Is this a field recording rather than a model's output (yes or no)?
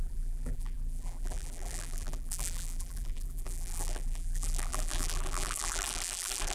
no